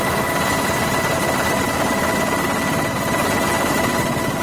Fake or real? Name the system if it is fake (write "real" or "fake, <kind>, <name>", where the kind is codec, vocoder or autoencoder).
real